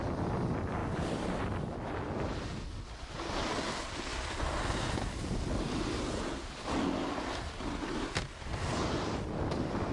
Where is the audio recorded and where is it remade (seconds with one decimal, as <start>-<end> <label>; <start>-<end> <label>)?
0.0-9.9 remade